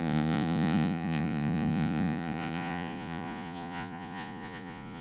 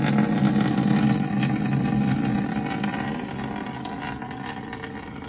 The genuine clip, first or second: second